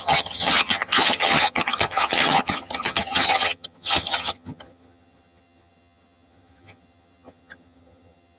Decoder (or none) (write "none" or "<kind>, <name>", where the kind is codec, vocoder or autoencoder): vocoder, HiFi-GAN